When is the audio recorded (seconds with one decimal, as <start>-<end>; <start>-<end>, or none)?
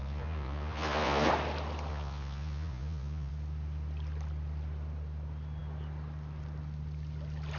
1.3-1.9; 3.3-7.6